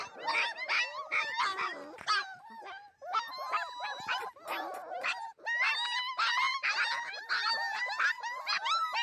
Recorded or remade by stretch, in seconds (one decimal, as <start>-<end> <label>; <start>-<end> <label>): 0.0-9.0 recorded